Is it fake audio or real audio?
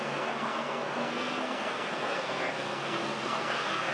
fake